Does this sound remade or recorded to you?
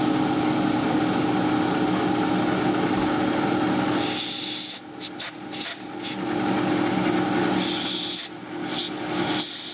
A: recorded